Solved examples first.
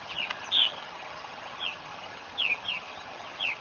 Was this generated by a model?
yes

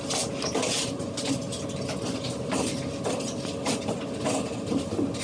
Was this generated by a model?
no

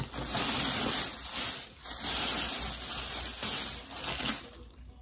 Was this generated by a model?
no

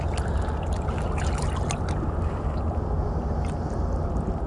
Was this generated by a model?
no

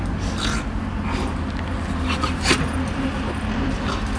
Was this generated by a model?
no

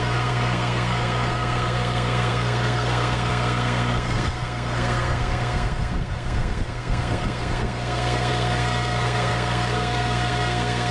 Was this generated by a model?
yes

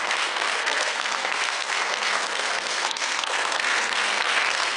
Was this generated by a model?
yes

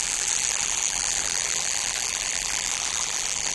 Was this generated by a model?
yes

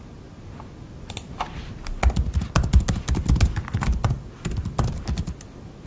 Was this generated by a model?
no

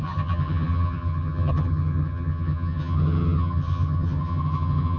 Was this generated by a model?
yes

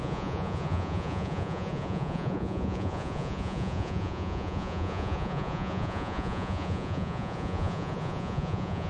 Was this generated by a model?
yes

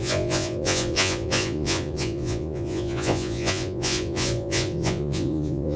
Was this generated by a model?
yes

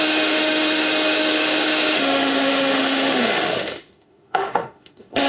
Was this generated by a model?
yes